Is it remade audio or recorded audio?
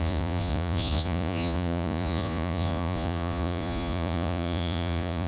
remade